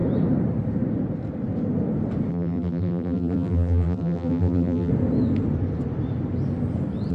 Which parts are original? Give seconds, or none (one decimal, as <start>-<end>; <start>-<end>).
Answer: 0.0-2.3; 4.9-7.1